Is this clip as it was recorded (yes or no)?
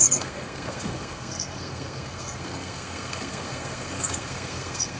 no